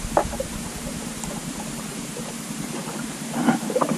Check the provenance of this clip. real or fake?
fake